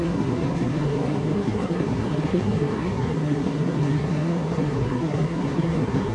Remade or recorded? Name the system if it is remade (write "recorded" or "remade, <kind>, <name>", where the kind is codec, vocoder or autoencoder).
remade, codec, SNAC